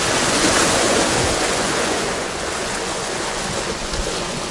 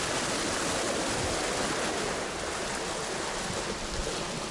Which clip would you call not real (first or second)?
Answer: first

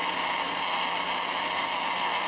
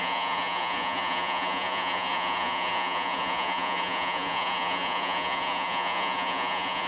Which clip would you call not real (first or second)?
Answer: second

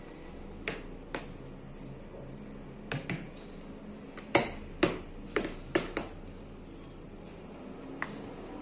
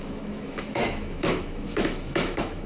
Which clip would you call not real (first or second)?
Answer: second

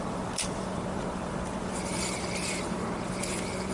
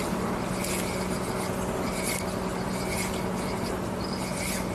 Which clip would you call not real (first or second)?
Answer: first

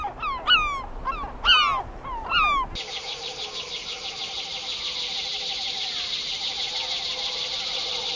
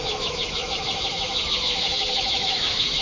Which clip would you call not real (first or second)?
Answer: second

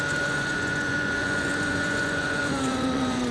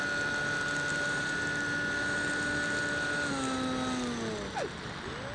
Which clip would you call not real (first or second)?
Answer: first